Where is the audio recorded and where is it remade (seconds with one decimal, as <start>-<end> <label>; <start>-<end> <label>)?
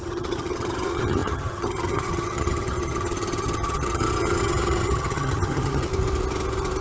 0.0-5.9 remade; 5.9-6.8 recorded